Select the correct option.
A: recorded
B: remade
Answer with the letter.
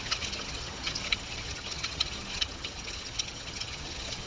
B